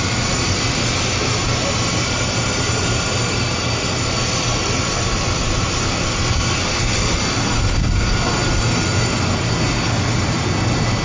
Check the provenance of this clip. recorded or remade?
recorded